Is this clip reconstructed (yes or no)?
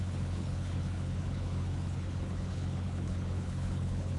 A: yes